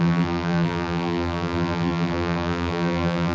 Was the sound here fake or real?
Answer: fake